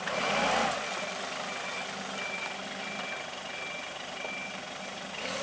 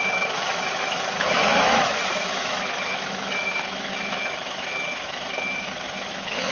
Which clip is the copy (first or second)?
second